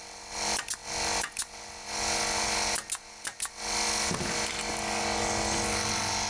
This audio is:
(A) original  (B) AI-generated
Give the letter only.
A